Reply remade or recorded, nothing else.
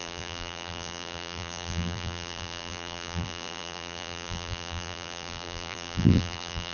remade